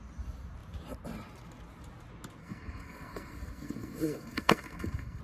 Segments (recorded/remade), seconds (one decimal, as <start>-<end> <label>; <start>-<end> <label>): 0.0-2.4 recorded; 2.4-5.2 remade